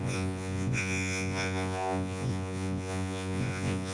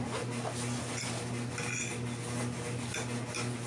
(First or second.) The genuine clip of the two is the second